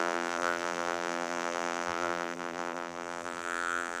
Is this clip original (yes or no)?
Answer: no